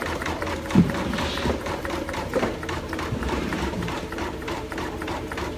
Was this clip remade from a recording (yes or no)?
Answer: yes